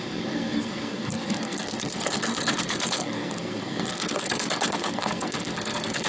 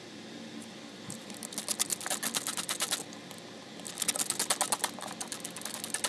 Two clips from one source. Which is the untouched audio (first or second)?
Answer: second